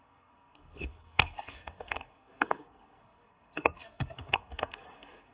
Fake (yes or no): yes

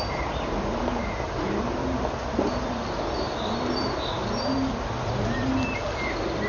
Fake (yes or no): no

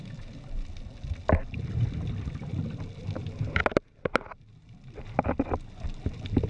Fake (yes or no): no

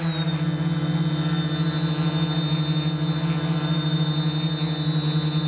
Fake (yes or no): no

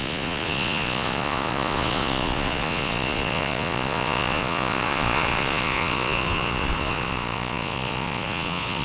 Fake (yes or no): yes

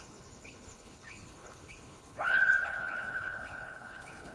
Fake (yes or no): yes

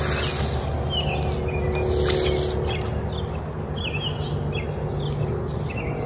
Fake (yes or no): no